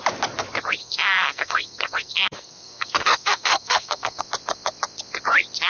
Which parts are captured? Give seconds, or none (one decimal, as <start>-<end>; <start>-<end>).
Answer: 0.0-0.8; 4.2-5.7